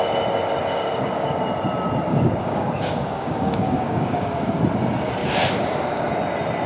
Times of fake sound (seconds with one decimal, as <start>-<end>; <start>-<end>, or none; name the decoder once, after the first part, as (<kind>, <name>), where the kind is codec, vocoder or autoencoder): 0.7-1.4 (codec, DAC); 2.1-4.6; 5.2-6.1